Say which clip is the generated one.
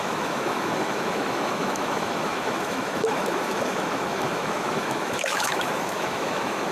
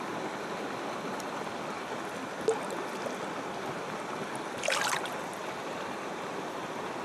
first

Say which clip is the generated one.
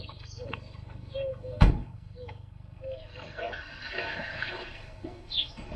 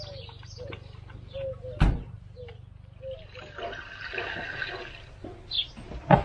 first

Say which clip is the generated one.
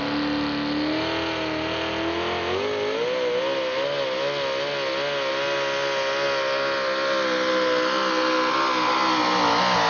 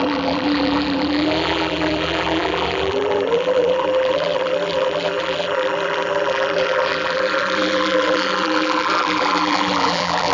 second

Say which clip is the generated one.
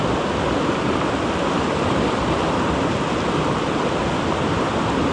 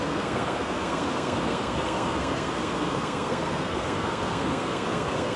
second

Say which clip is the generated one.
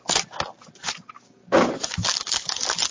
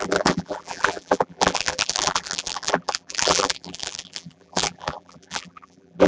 second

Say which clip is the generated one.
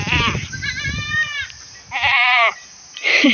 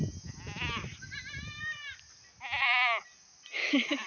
first